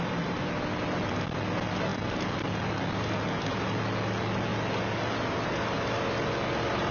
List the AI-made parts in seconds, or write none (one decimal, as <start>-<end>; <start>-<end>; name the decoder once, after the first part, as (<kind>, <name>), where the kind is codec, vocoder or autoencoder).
none